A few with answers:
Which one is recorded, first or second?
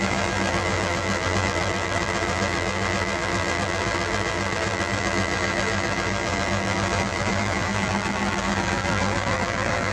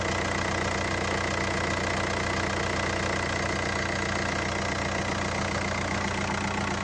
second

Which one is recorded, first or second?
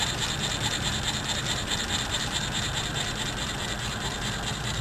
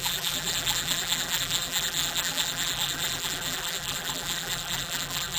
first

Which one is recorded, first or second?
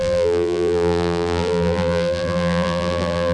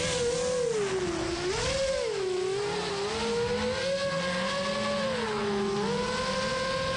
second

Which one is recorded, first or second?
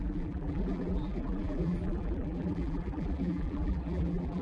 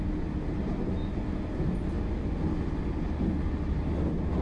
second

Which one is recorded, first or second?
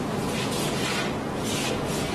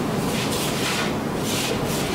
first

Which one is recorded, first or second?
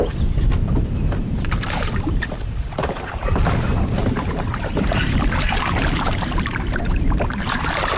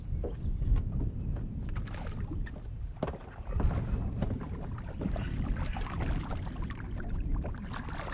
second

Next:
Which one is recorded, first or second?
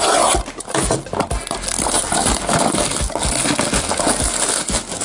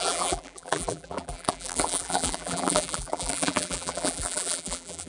first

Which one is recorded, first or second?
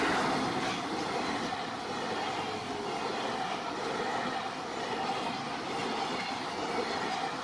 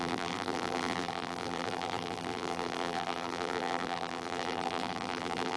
first